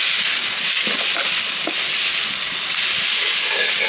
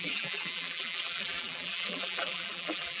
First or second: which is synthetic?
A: second